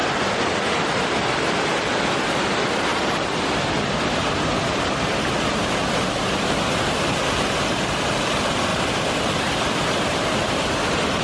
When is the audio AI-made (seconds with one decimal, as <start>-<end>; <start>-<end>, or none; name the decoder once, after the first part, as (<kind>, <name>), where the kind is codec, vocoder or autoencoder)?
0.0-0.5 (vocoder, BigVGAN v2); 8.7-9.2